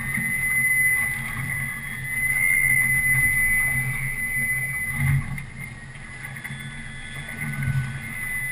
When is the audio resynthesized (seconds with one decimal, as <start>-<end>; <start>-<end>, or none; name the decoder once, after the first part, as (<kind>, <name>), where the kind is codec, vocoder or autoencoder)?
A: none